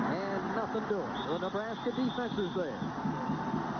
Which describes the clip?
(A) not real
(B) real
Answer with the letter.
B